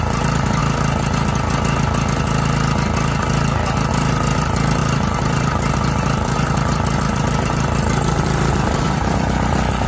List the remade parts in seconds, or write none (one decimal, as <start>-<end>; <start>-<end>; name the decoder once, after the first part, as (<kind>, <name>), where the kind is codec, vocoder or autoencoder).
0.0-0.6 (vocoder, BigVGAN v2); 3.9-9.9